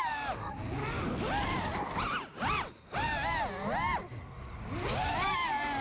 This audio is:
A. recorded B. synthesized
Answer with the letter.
A